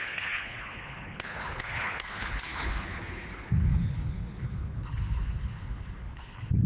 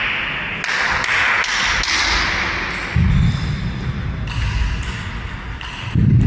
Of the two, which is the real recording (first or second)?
second